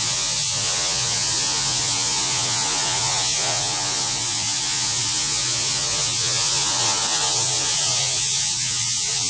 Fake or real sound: fake